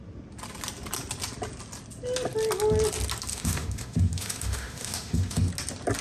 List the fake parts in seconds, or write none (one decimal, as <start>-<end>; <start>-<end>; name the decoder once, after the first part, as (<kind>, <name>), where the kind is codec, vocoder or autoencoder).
3.3-5.5 (autoencoder, DAC-VAE)